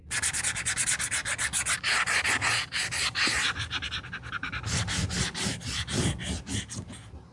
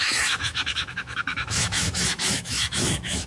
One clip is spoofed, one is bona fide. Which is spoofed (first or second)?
second